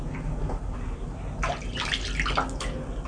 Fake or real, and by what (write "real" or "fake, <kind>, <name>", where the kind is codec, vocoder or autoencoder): real